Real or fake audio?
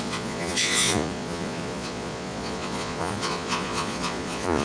fake